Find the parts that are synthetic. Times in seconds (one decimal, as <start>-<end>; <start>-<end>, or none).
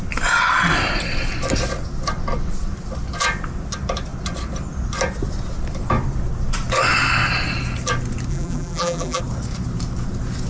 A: 8.3-9.2